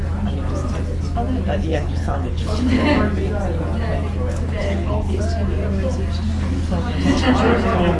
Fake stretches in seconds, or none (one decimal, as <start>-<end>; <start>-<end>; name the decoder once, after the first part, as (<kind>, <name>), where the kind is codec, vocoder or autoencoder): 1.7-2.8 (codec, HILCodec); 4.6-5.2